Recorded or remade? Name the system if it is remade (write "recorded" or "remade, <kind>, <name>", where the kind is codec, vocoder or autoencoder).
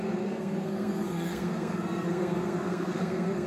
remade, codec, SNAC